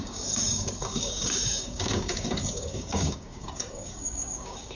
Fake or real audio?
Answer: fake